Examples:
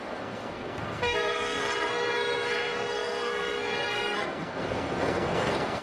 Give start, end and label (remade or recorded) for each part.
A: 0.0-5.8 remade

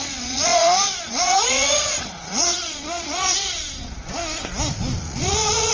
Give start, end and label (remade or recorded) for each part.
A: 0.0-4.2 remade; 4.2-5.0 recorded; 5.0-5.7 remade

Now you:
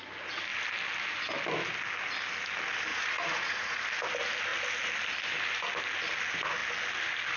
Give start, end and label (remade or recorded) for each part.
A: 0.0-2.9 recorded; 2.9-3.8 remade; 3.8-7.4 recorded

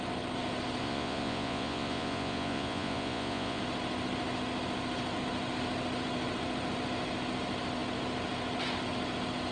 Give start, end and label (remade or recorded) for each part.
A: 0.0-0.8 recorded; 0.8-3.6 remade; 3.6-9.5 recorded